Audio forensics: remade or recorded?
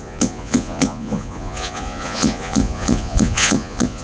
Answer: remade